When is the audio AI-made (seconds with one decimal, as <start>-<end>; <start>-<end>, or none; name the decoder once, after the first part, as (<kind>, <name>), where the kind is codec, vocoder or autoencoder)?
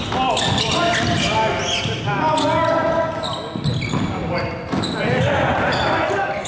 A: none